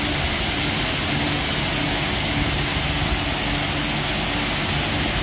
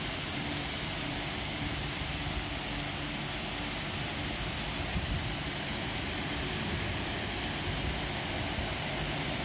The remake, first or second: second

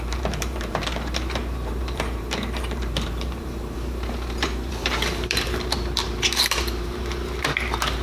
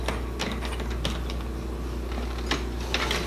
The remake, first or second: first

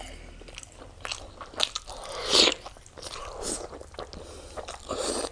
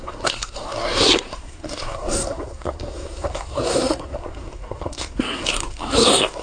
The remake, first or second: second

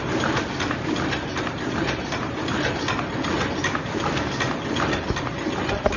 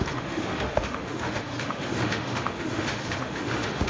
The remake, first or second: second